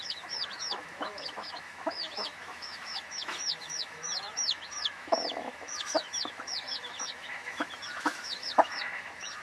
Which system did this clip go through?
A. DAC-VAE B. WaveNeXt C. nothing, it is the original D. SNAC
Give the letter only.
A